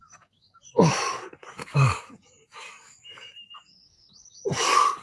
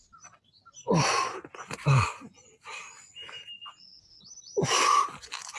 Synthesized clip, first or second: first